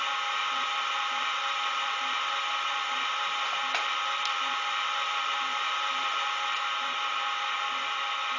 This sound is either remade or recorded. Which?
remade